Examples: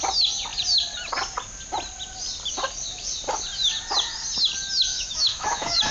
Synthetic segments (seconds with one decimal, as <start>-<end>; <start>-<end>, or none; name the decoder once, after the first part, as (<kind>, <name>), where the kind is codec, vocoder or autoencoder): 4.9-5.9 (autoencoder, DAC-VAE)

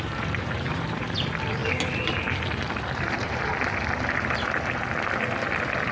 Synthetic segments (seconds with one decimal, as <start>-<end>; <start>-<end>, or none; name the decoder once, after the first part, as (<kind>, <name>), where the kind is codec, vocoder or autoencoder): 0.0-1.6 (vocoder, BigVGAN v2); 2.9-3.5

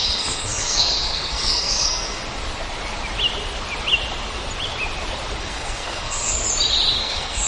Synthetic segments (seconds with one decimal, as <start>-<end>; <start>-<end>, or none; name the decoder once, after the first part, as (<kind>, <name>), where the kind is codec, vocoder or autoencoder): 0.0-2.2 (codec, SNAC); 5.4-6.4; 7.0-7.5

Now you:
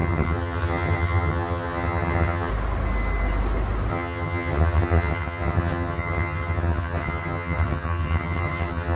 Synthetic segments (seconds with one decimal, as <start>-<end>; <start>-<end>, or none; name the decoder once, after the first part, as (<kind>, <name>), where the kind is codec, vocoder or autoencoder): 0.0-2.5 (vocoder, HiFi-GAN); 3.9-9.0